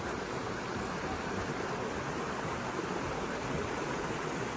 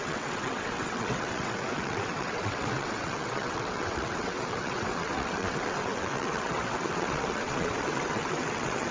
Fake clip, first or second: second